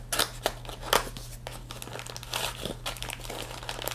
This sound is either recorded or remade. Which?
recorded